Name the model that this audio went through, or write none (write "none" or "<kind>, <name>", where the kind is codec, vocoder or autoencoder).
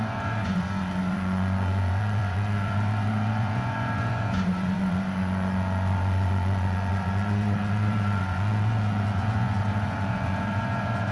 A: vocoder, Vocos